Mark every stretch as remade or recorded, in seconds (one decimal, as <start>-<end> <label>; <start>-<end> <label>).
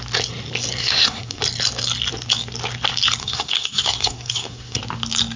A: 0.0-0.8 recorded; 0.8-1.4 remade; 1.4-3.2 recorded; 3.2-4.8 remade; 4.8-5.4 recorded